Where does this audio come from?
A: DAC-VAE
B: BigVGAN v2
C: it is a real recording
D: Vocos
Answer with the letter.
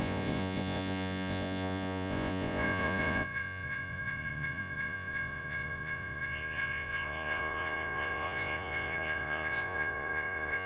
D